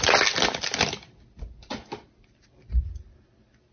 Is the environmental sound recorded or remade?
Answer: recorded